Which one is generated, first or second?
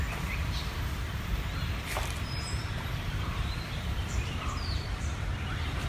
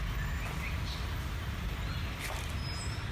first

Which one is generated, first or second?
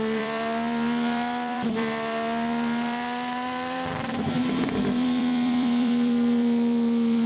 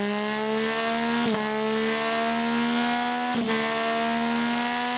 first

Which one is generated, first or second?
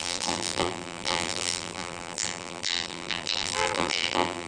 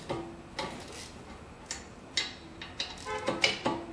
first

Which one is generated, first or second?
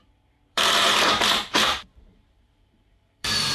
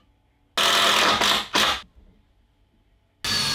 first